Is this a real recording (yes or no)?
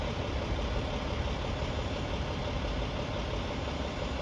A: yes